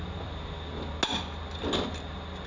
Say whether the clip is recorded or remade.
recorded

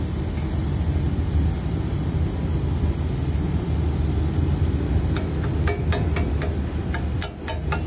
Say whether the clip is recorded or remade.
recorded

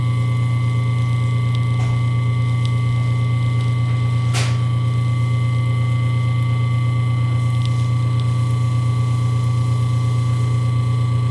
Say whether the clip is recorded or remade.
recorded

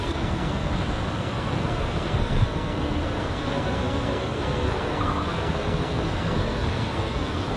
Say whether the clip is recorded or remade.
remade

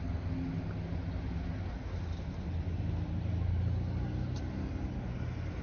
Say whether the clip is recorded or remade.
recorded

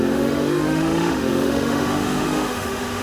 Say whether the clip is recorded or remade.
remade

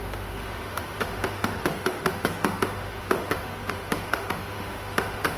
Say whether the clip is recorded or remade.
remade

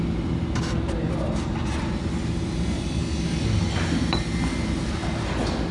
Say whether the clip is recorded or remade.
recorded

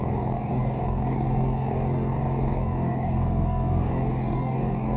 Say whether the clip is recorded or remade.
remade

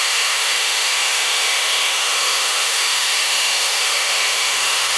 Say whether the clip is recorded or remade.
remade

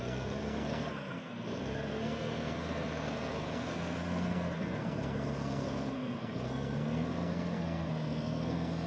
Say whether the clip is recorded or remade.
remade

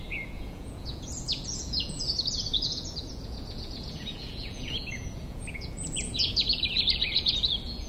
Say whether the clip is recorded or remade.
remade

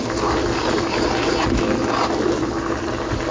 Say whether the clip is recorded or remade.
recorded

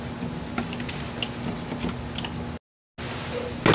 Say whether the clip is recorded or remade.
recorded